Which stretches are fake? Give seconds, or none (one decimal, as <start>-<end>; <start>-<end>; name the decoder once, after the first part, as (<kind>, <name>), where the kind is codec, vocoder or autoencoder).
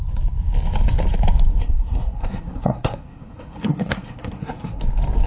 1.6-4.8 (codec, SNAC)